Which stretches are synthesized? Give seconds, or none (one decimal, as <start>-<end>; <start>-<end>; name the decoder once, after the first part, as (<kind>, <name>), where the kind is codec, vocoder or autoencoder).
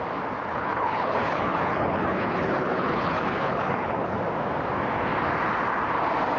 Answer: 0.4-4.2 (codec, HILCodec)